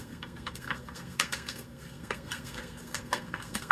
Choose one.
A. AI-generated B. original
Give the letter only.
A